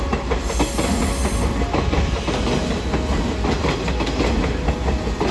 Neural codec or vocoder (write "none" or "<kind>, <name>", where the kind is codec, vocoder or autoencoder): none